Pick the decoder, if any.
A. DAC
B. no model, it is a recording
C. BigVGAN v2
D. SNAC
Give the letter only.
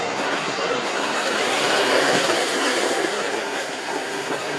D